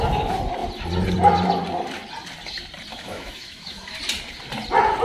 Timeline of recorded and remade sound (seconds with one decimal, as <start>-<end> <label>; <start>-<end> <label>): 0.0-2.9 recorded; 2.9-4.0 remade; 4.0-5.0 recorded